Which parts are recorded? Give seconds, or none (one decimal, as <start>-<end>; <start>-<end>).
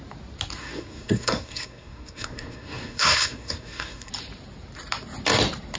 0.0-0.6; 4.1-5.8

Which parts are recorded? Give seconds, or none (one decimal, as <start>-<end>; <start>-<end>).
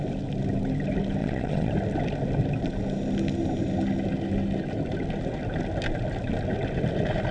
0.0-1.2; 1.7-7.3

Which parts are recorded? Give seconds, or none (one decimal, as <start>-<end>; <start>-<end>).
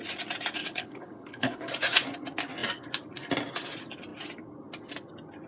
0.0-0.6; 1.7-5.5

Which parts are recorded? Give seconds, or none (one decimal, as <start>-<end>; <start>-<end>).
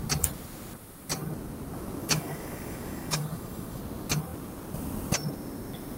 0.0-2.0; 3.8-6.0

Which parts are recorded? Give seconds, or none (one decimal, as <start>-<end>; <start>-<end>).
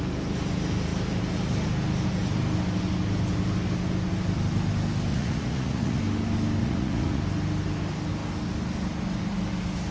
0.0-5.1; 6.0-6.6; 7.2-9.9